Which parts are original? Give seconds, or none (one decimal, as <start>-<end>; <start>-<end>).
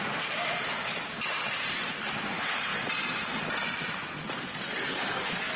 2.7-4.3